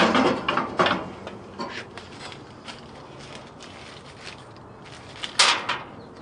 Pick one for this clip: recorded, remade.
recorded